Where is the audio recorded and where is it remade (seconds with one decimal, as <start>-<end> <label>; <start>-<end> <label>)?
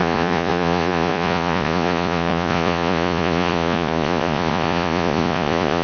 0.0-5.8 remade